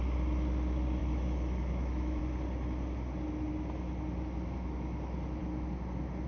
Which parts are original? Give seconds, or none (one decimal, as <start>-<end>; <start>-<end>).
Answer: 0.0-1.0; 2.2-6.3